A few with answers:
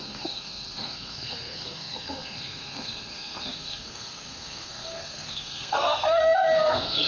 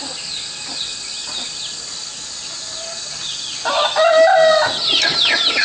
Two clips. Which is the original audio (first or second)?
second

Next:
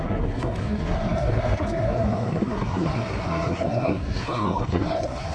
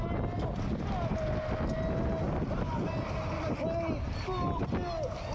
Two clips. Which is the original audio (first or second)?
second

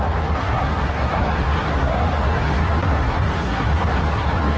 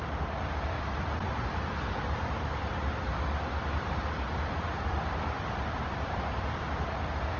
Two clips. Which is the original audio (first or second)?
second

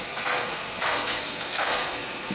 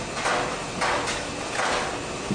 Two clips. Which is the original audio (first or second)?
second